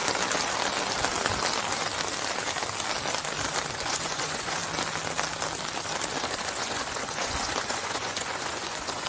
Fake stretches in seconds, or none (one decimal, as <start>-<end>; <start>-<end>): 3.7-4.6; 6.2-9.1